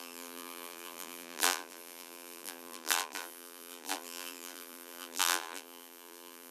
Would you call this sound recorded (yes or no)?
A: no